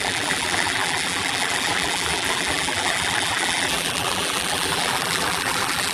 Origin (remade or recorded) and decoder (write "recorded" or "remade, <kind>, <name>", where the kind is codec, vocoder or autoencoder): remade, vocoder, BigVGAN v2